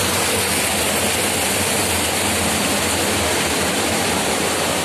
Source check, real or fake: real